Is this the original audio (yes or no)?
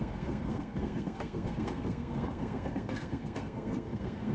no